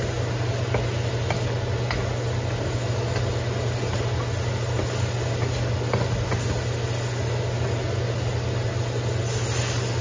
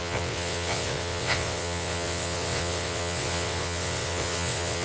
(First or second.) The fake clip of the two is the second